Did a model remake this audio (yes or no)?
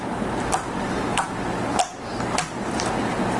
no